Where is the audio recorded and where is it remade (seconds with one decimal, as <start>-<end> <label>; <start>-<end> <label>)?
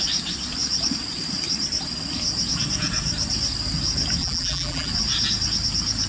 0.0-4.2 recorded; 4.2-4.9 remade; 4.9-6.1 recorded